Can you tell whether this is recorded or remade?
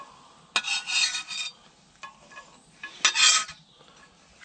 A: recorded